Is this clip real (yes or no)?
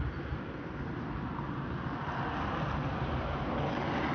yes